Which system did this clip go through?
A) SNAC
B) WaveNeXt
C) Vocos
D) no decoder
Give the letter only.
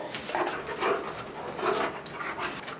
D